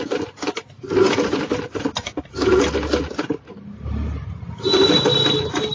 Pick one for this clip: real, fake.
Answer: real